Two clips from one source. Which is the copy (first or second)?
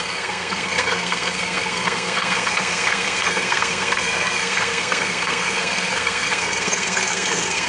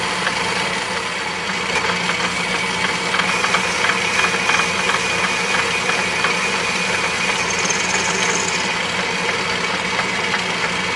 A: first